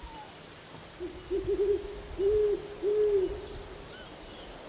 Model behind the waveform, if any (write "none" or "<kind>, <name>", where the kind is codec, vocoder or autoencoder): none